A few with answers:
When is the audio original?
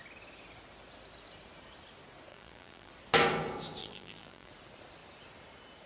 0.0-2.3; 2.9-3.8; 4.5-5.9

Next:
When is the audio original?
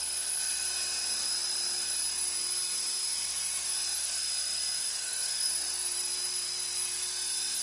0.0-4.8; 5.5-7.6